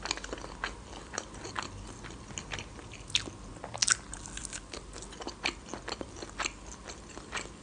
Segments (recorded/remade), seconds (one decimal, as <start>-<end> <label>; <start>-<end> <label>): 0.0-7.6 recorded

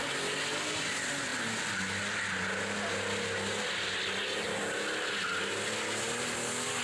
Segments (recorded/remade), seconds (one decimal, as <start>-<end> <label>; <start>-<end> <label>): 0.0-6.8 recorded

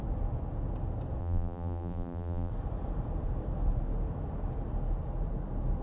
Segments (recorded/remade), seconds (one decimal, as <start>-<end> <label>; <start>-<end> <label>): 0.0-1.2 recorded; 1.2-2.5 remade; 2.5-5.8 recorded

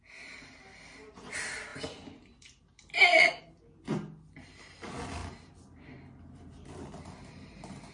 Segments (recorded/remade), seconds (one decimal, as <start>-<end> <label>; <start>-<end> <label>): 0.0-7.9 recorded

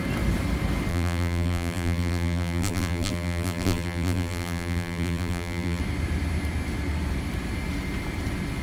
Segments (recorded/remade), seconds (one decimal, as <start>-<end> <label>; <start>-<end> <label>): 0.0-0.9 recorded; 0.9-5.8 remade; 5.8-8.6 recorded

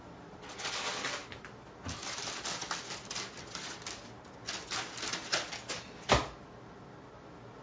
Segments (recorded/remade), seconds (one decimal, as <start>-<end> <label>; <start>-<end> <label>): 0.0-7.6 recorded

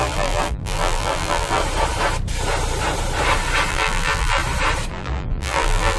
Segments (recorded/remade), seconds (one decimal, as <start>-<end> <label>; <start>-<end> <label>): 0.0-1.6 remade; 1.6-3.7 recorded; 3.7-4.4 remade; 4.4-4.9 recorded; 4.9-6.0 remade